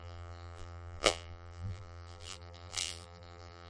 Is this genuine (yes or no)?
no